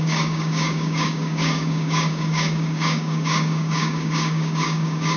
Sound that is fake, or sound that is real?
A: fake